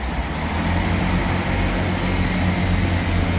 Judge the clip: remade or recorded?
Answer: recorded